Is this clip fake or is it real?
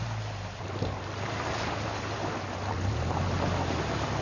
real